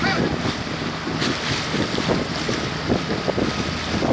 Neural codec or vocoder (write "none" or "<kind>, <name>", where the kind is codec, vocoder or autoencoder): none